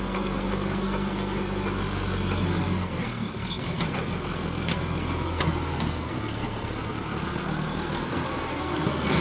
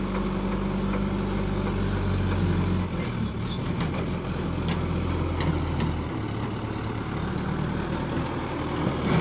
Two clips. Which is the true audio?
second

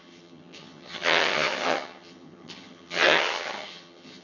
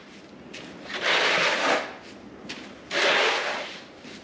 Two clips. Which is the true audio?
second